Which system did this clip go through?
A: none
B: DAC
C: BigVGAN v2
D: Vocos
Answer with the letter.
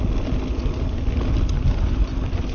A